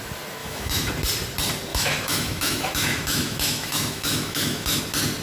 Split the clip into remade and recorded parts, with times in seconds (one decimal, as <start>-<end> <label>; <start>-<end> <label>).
0.0-0.4 recorded; 0.4-0.9 remade; 0.9-1.7 recorded; 1.7-4.8 remade; 4.8-5.2 recorded